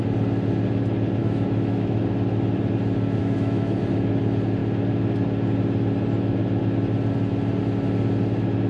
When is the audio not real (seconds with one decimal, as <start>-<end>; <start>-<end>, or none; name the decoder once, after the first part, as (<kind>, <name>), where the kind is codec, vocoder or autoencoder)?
1.2-2.0 (autoencoder, DAC-VAE); 3.2-3.8